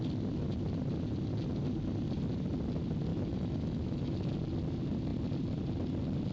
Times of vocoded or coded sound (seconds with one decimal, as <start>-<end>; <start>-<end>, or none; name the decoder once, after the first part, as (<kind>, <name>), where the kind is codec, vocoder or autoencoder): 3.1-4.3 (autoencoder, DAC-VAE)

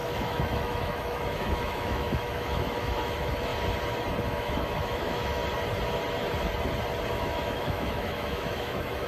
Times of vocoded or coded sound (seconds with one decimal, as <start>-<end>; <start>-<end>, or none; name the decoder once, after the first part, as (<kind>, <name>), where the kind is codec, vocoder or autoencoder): 0.0-3.5 (autoencoder, DAC-VAE); 4.2-5.4; 7.1-9.1

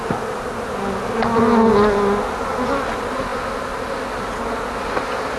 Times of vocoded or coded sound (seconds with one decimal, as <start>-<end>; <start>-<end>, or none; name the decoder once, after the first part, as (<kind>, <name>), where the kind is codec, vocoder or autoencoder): none

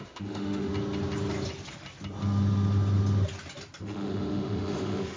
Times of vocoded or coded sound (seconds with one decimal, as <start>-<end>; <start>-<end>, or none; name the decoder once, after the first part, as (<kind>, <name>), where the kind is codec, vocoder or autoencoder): 0.0-0.7 (autoencoder, DAC-VAE); 3.8-5.2

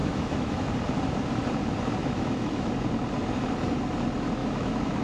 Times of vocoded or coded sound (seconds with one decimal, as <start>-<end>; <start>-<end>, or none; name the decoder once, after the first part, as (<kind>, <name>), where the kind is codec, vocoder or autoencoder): 0.0-0.7 (autoencoder, DAC-VAE); 2.0-2.7; 4.4-5.0

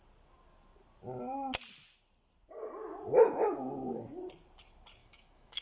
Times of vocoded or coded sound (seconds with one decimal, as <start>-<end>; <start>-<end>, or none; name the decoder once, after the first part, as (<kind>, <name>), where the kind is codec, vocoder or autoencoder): 5.0-5.6 (autoencoder, DAC-VAE)

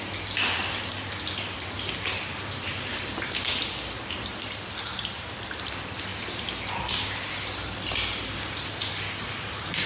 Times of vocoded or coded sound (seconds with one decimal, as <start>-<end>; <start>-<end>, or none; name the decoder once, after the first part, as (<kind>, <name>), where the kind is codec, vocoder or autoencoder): none

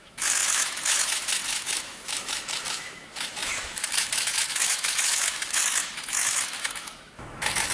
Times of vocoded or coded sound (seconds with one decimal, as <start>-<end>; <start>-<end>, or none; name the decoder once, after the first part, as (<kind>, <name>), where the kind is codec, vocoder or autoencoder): 0.0-7.7 (autoencoder, DAC-VAE)